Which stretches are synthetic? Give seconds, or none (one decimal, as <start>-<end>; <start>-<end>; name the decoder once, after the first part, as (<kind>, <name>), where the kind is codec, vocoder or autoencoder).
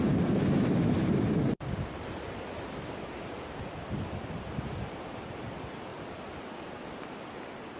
none